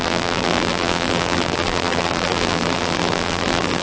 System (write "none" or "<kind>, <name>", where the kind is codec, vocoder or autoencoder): vocoder, BigVGAN v2